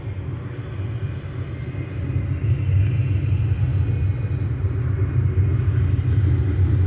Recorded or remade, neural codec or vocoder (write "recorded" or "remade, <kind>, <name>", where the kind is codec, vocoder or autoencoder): recorded